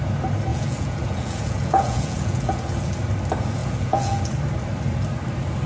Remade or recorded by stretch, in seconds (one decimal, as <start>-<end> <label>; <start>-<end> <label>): 0.0-0.5 recorded; 0.5-2.9 remade; 2.9-3.6 recorded; 3.6-4.2 remade; 4.2-5.7 recorded